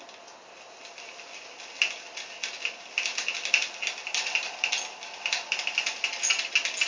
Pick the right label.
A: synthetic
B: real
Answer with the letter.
B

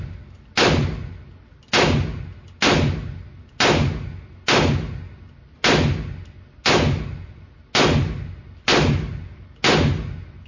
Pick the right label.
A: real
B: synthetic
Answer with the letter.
A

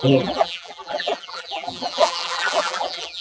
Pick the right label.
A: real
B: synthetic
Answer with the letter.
B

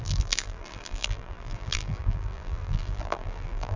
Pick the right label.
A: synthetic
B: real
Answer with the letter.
A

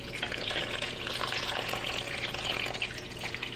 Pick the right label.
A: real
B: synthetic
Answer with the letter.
B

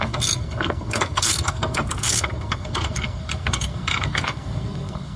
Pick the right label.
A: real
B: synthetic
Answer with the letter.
B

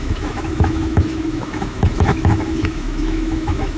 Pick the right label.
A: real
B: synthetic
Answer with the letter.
B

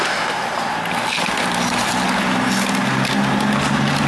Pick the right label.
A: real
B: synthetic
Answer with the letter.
A